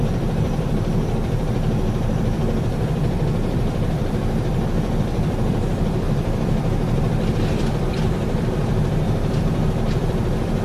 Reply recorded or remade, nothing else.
remade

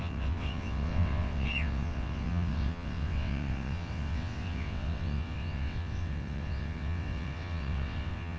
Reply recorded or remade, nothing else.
remade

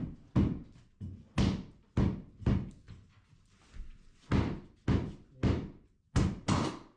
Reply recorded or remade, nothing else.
recorded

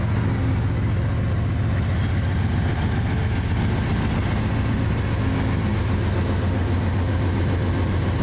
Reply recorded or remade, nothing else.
recorded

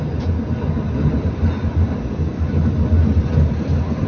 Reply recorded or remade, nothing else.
recorded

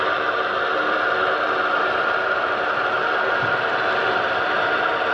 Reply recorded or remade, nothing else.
recorded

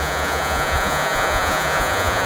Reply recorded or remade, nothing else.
remade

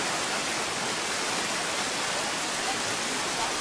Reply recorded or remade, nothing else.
recorded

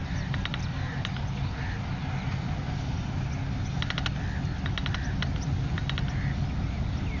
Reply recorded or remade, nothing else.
recorded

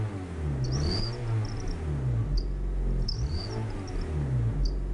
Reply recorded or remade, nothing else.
recorded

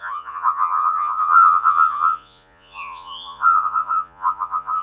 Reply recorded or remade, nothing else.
remade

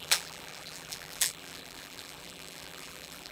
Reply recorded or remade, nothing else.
remade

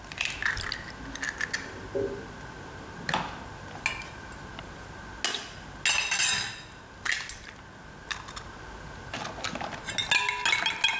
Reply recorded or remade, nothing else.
recorded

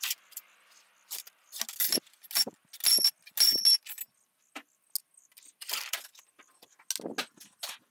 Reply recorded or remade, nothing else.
recorded